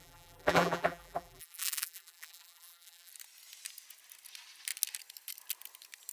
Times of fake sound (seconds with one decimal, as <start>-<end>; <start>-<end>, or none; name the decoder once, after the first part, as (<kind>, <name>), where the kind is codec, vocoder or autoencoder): 0.0-3.1 (vocoder, BigVGAN v2)